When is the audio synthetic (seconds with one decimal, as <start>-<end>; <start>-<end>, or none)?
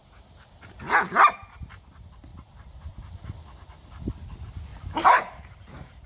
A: 0.0-0.9; 2.3-4.0; 4.7-6.1